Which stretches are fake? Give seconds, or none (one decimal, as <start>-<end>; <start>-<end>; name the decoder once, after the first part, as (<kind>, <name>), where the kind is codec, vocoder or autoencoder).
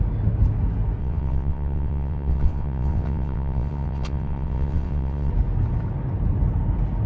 1.0-5.3 (vocoder, WaveNeXt)